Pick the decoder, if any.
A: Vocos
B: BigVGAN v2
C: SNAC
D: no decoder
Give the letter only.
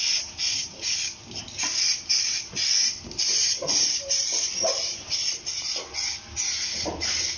D